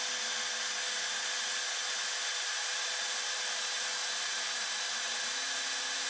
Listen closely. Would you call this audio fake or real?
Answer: real